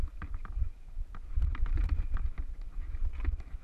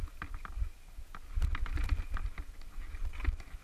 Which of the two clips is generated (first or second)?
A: first